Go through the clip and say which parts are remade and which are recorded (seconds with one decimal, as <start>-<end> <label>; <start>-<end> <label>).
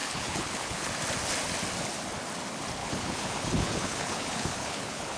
0.0-0.9 remade; 0.9-2.8 recorded; 2.8-5.2 remade